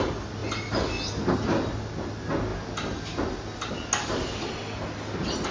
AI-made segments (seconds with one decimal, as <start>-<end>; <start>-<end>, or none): none